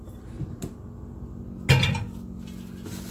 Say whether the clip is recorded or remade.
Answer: recorded